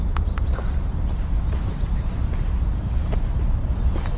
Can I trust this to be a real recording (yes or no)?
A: no